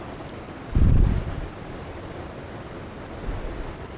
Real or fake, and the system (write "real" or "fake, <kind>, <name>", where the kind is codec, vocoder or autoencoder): real